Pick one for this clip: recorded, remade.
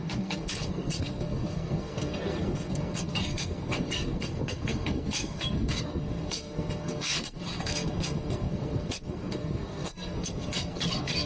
remade